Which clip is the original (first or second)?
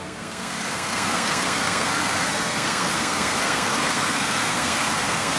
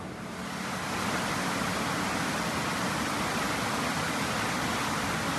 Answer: second